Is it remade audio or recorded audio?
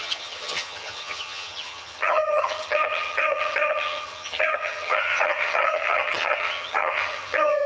remade